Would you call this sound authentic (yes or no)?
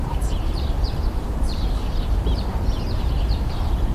no